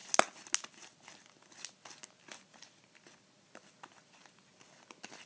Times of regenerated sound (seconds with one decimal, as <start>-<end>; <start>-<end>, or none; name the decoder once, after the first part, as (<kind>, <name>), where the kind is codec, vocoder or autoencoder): none